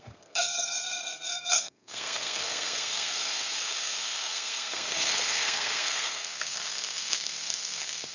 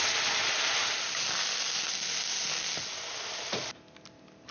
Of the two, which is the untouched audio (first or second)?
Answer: second